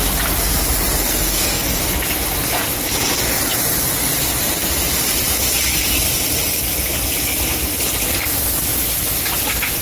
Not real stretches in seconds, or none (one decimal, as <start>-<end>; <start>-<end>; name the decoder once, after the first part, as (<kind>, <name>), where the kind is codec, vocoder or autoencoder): 1.0-1.8 (codec, SNAC)